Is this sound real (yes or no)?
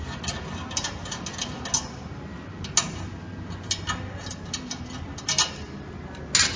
yes